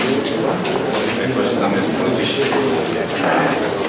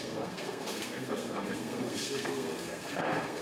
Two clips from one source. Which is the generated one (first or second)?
second